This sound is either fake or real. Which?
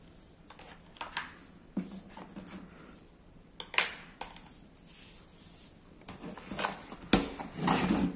real